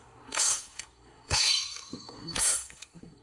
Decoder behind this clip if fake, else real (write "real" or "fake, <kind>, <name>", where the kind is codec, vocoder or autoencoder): fake, codec, SNAC